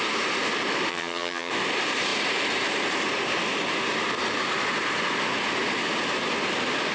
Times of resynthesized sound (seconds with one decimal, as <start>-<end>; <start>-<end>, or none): 0.9-1.5